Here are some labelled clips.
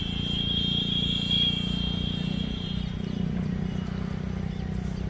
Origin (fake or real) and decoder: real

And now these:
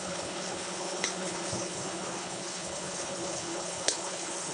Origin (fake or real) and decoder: fake, codec, HILCodec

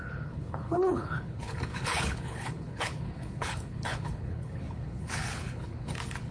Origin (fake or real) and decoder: fake, codec, HILCodec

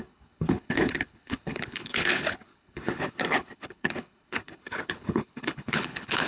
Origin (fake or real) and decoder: fake, codec, HILCodec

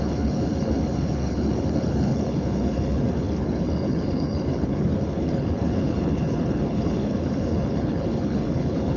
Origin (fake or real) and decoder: fake, codec, HILCodec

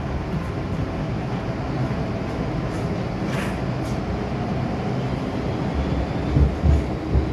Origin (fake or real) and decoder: real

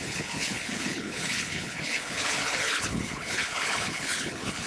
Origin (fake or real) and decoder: fake, codec, HILCodec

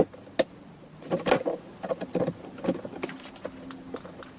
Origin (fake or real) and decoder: real